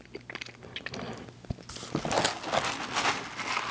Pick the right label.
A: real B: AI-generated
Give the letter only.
A